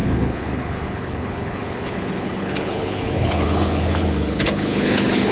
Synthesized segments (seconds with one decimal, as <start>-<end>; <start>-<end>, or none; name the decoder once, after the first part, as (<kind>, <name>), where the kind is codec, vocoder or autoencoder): 0.0-5.3 (codec, HILCodec)